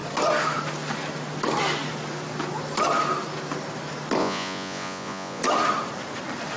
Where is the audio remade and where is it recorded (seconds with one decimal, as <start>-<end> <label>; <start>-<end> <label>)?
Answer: 0.0-4.2 recorded; 4.2-5.4 remade; 5.4-6.6 recorded